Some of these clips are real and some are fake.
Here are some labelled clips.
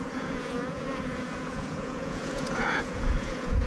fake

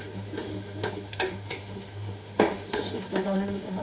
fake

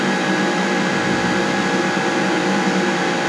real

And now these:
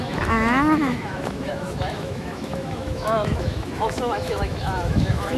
fake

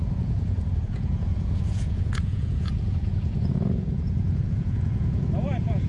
fake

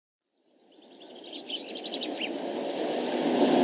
real